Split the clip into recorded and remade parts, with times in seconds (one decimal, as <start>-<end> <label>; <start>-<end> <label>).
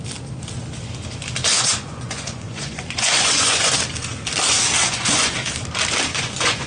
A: 0.0-1.5 recorded; 1.5-3.8 remade; 3.8-4.8 recorded; 4.8-5.5 remade; 5.5-6.1 recorded; 6.1-6.7 remade